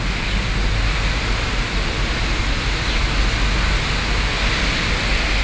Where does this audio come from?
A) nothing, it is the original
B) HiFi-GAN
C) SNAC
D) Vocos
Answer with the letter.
A